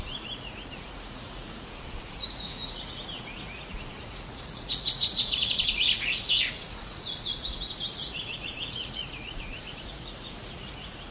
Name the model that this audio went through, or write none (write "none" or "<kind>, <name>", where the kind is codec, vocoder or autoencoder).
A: vocoder, Vocos